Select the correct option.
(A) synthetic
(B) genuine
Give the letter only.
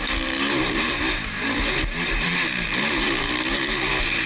A